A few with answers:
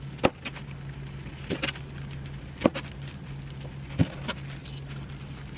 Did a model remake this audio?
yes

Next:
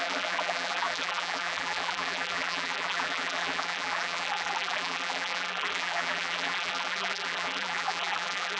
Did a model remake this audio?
yes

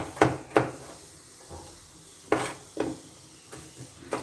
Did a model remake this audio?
no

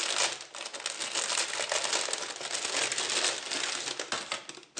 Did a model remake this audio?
no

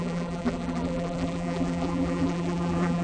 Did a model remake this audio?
yes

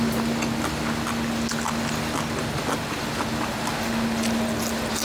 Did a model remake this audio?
no